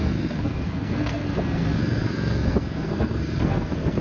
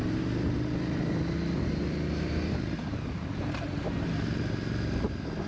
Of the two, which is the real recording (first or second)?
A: second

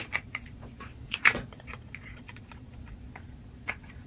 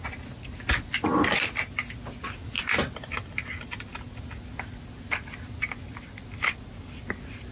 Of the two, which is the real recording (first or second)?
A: second